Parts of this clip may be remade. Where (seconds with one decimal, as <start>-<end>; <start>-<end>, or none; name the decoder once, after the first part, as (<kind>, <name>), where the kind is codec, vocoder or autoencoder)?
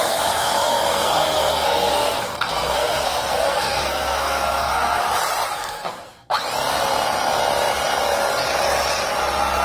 0.0-5.0 (codec, SNAC); 5.5-6.3